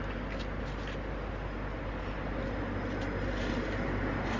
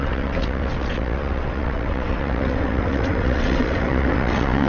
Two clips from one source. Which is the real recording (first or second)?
first